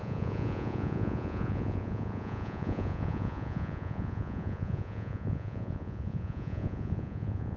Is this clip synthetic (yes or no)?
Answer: yes